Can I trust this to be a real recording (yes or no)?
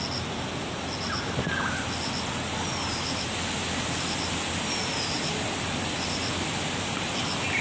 yes